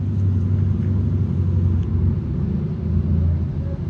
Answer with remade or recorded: recorded